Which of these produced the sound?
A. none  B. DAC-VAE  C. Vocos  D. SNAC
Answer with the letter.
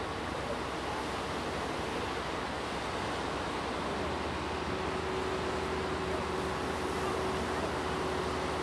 A